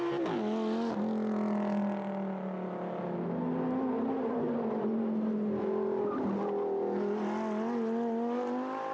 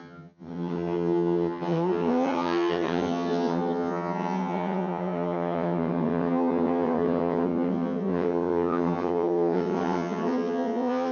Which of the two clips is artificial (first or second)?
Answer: second